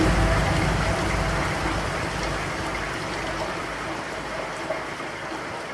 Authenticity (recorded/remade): recorded